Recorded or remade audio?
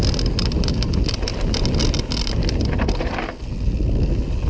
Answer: recorded